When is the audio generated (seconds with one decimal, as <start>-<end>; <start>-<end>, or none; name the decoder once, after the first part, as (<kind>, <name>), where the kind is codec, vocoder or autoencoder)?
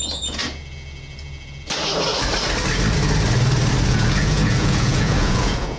0.0-0.4 (vocoder, Vocos); 3.9-5.8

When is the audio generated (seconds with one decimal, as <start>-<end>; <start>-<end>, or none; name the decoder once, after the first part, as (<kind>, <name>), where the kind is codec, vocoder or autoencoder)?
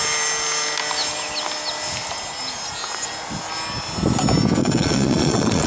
4.6-5.7 (vocoder, Vocos)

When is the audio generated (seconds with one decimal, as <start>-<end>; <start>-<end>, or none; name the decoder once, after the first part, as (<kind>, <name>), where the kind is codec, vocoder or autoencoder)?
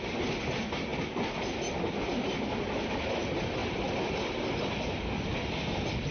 none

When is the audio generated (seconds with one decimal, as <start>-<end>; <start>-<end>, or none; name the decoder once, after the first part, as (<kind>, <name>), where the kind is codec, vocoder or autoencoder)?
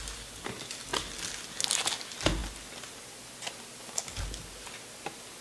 none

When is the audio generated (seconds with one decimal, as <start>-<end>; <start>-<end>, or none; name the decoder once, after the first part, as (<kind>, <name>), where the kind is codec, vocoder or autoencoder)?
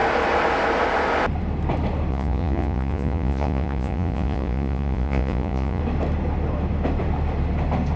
2.1-5.8 (vocoder, Vocos)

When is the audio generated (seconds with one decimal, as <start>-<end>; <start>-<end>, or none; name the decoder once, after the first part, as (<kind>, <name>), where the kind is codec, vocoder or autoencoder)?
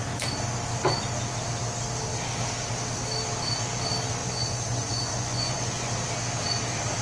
4.2-5.9 (vocoder, Vocos)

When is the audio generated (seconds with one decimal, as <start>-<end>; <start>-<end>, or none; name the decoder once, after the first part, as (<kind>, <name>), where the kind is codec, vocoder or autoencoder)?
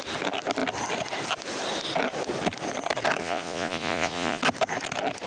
3.2-4.4 (vocoder, Vocos)